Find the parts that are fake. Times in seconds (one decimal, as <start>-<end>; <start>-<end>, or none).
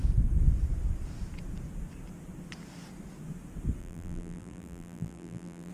3.8-5.7